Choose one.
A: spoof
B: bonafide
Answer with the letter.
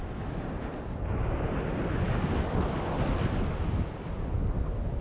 B